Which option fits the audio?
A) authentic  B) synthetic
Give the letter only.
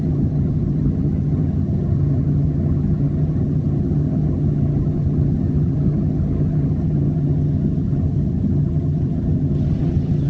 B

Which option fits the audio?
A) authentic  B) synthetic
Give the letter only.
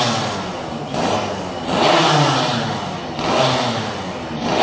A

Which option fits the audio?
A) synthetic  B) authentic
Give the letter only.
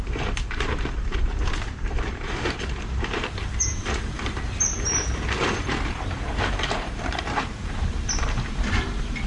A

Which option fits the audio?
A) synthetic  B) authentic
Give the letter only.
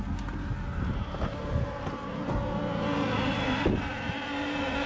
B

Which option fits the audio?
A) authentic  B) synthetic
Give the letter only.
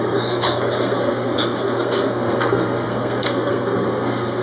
B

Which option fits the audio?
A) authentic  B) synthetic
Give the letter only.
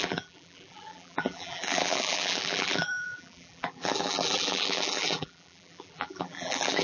B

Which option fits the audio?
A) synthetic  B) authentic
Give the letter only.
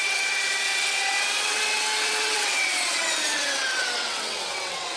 A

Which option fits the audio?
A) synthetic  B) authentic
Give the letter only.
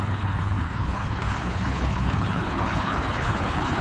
A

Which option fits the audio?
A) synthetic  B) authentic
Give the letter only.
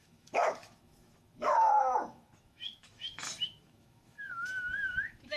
A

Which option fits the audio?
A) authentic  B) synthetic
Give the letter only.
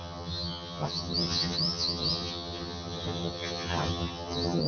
B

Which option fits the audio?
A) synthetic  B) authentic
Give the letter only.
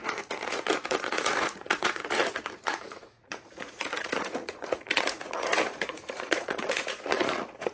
A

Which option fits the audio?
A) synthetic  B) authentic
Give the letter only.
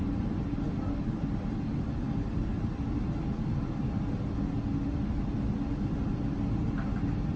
B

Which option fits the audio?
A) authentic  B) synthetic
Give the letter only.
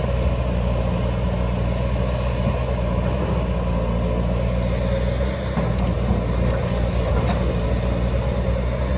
A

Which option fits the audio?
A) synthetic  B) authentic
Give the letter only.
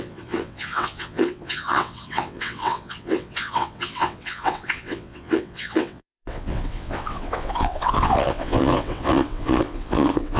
A